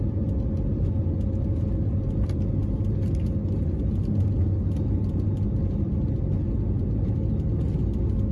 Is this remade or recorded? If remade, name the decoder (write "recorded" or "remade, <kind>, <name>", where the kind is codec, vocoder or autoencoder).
recorded